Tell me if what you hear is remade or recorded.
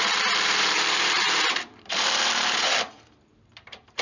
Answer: remade